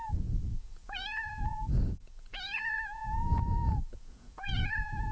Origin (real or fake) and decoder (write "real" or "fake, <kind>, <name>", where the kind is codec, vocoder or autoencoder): fake, vocoder, Vocos